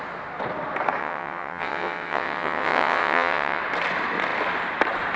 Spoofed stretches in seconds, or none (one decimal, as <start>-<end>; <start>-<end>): 1.0-3.6